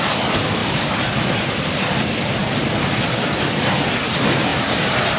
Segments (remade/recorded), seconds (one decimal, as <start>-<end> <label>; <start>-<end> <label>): 0.0-0.6 recorded; 0.6-1.9 remade; 1.9-5.2 recorded